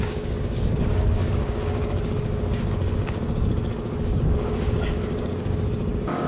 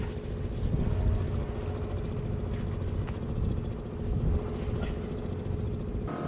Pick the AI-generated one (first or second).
first